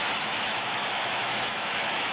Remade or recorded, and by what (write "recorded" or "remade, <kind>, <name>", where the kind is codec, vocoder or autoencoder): remade, autoencoder, DAC-VAE